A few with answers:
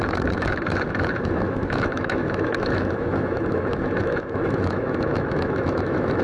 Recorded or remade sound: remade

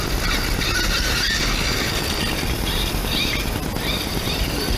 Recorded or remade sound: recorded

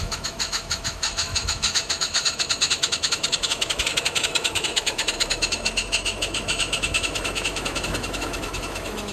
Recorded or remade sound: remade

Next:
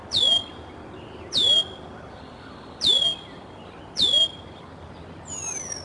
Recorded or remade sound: recorded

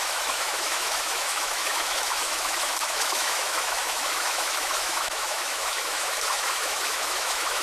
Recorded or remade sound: remade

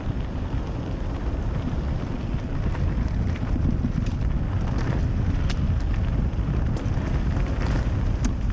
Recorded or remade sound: recorded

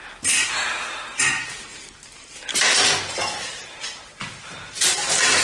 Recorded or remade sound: recorded